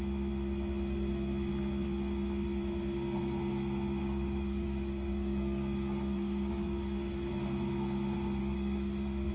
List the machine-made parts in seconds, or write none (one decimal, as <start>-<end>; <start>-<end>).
4.0-7.3; 8.4-9.3